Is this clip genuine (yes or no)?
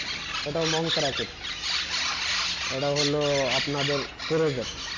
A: yes